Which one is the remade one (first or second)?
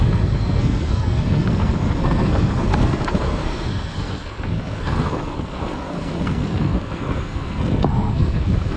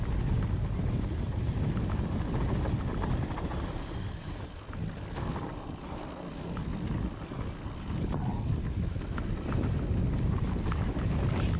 first